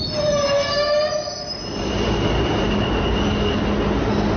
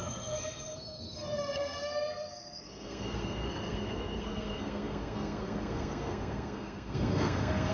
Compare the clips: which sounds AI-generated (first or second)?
second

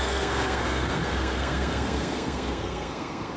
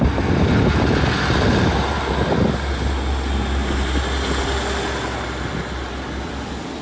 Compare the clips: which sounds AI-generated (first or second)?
first